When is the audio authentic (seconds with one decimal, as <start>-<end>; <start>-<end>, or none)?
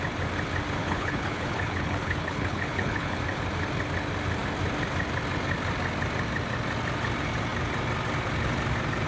0.0-0.8; 3.2-9.1